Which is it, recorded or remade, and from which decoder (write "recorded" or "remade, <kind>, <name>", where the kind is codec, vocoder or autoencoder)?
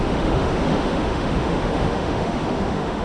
remade, autoencoder, DAC-VAE